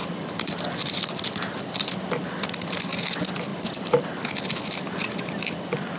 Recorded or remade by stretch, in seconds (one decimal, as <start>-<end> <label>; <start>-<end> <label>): 0.0-6.0 recorded